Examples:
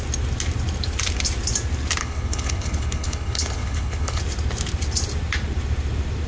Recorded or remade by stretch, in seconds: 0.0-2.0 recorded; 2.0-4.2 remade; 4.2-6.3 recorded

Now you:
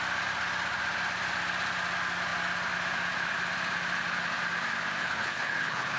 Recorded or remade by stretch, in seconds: 0.0-5.0 recorded; 5.0-6.0 remade

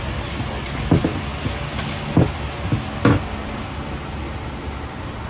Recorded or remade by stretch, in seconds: 0.0-5.3 recorded

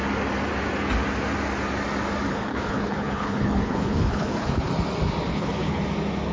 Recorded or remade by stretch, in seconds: 0.0-2.3 recorded; 2.3-4.7 remade; 4.7-5.3 recorded; 5.3-5.8 remade; 5.8-6.3 recorded

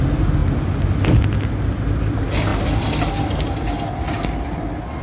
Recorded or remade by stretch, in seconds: 0.0-5.0 recorded

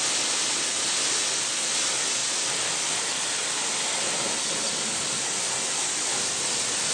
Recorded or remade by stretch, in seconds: 0.0-6.9 recorded

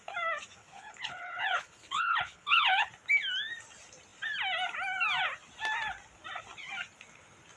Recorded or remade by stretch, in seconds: 0.0-0.6 recorded; 0.6-2.9 remade; 2.9-7.6 recorded